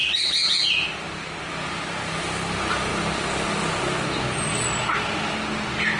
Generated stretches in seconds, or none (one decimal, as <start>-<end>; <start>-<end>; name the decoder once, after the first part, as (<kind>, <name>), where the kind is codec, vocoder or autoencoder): none